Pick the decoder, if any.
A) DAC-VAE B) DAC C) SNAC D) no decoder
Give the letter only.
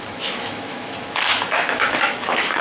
A